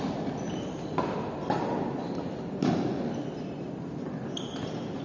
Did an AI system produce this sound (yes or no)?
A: no